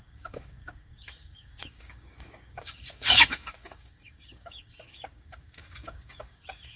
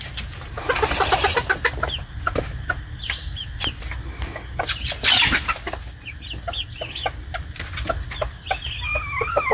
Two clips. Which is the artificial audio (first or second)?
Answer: first